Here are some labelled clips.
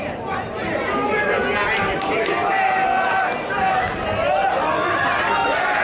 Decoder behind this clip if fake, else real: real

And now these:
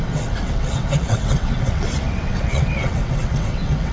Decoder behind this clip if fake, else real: fake, vocoder, WaveNeXt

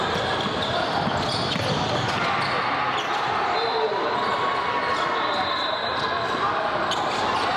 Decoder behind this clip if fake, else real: real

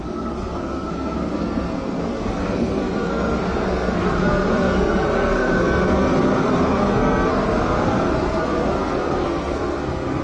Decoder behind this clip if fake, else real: fake, codec, SNAC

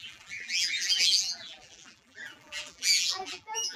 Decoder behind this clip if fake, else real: fake, vocoder, BigVGAN v2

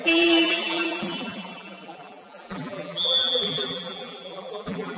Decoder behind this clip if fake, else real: fake, vocoder, BigVGAN v2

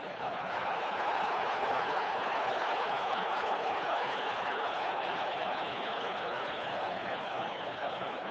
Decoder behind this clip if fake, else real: fake, codec, HILCodec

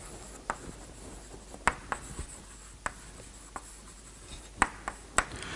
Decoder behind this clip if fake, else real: real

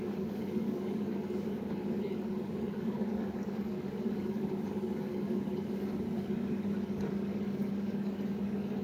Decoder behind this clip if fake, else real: fake, codec, DAC